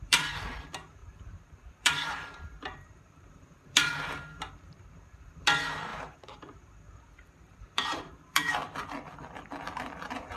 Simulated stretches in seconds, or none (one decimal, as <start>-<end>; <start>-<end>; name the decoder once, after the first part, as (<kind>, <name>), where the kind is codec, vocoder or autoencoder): 0.0-8.6 (vocoder, BigVGAN v2); 9.6-10.4